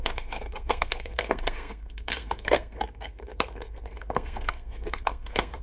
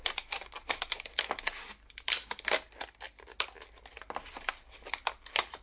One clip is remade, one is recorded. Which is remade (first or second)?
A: first